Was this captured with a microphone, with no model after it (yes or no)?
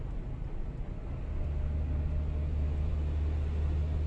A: yes